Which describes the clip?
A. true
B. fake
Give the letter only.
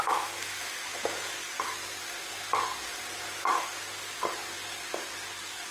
A